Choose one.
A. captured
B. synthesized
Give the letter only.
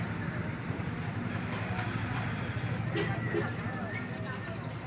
B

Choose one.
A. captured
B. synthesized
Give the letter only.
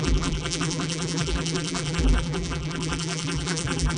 B